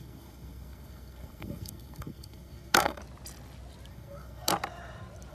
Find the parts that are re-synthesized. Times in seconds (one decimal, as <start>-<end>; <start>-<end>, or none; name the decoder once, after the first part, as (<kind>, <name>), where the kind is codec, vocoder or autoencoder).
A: 0.0-3.0 (codec, SNAC); 3.9-4.5